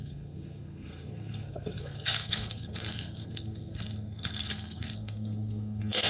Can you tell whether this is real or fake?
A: fake